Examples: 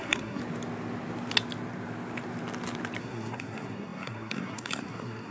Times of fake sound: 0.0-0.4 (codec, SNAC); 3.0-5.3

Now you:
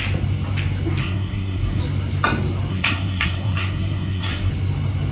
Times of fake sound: 1.0-1.8 (codec, SNAC); 2.7-4.5